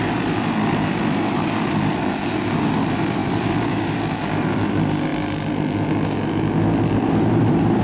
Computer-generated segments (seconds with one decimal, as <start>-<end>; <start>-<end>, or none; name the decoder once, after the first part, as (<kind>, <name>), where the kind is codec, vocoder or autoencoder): 0.0-5.1 (vocoder, BigVGAN v2); 6.9-7.8